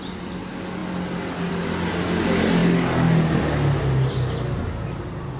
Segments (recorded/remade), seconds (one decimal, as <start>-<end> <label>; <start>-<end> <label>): 0.0-5.4 recorded